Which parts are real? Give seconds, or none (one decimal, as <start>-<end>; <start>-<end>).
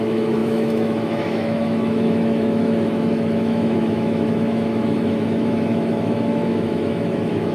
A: none